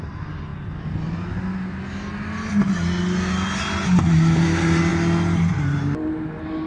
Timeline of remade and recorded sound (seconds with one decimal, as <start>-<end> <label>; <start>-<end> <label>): 0.0-6.7 recorded